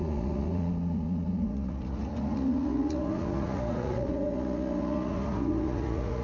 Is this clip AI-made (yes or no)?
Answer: yes